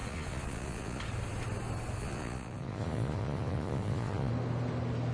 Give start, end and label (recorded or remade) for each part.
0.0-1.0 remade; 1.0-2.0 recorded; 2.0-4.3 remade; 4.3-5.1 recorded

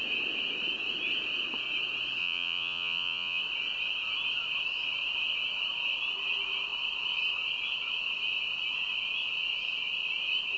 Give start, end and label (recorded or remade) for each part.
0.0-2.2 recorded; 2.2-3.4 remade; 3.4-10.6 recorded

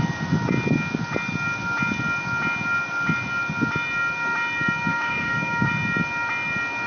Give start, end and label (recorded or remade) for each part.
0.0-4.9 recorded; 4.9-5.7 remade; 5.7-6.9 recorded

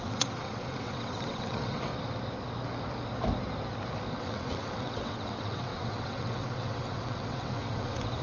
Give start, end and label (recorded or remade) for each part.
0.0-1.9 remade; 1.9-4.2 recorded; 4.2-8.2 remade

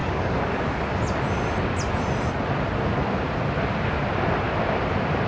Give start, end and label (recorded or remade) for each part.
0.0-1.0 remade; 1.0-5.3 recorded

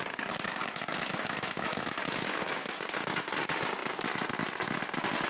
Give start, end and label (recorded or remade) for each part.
0.0-0.6 recorded; 0.6-2.8 remade; 2.8-5.3 recorded

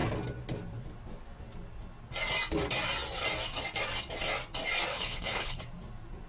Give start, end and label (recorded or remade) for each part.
0.0-4.9 recorded; 4.9-5.6 remade; 5.6-6.3 recorded